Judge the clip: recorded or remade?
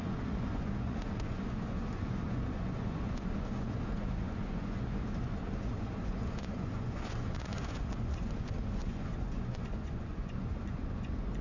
remade